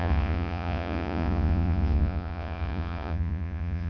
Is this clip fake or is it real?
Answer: fake